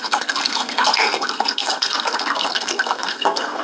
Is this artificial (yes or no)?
yes